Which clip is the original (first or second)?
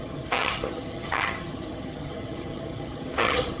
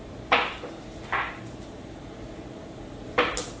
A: second